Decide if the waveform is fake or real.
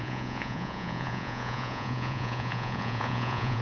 fake